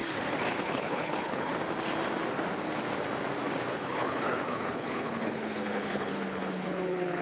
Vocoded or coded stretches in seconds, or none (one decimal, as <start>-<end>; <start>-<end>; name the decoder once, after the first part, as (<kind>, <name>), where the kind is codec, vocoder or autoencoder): 0.6-1.5 (codec, HILCodec); 3.7-7.2